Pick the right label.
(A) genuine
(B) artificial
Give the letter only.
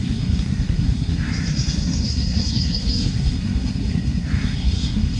B